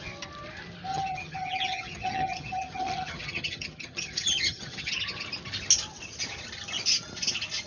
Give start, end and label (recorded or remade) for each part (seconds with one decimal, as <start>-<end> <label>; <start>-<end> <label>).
0.0-0.9 recorded; 0.9-4.9 remade; 4.9-7.7 recorded